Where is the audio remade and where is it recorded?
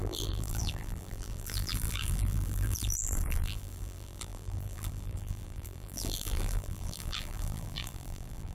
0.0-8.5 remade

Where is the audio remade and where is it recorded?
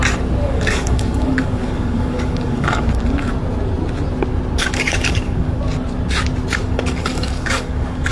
0.0-0.4 recorded; 0.4-3.3 remade; 3.3-4.6 recorded; 4.6-5.6 remade; 5.6-6.6 recorded; 6.6-8.1 remade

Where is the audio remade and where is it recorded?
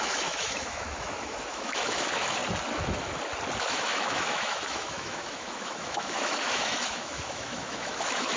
0.0-2.4 remade; 2.4-3.6 recorded; 3.6-8.4 remade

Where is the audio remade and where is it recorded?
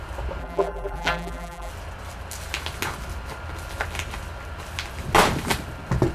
0.0-0.4 recorded; 0.4-1.7 remade; 1.7-6.1 recorded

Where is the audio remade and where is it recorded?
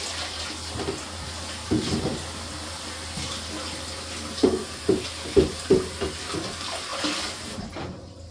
0.0-8.3 recorded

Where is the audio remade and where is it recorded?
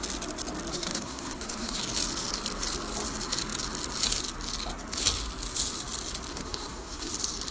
0.0-0.7 recorded; 0.7-1.8 remade; 1.8-6.3 recorded; 6.3-7.1 remade; 7.1-7.5 recorded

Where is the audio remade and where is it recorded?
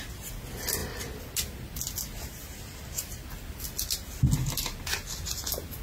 0.0-5.8 recorded